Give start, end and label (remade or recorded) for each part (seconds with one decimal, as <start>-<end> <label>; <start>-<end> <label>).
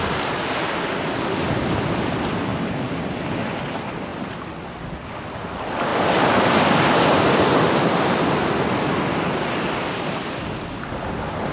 0.0-11.5 recorded